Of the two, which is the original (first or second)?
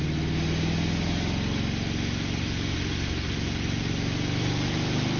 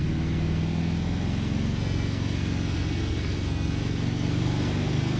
first